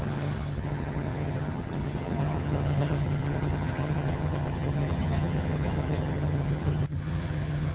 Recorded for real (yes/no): no